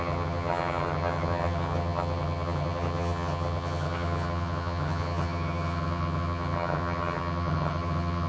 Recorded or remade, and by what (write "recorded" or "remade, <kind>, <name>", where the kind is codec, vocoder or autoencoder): remade, vocoder, HiFi-GAN